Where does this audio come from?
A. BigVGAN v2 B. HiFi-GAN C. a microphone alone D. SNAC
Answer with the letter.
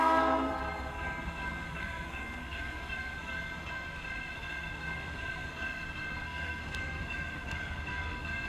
D